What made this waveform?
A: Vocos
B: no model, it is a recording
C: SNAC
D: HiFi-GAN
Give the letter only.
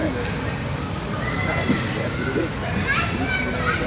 B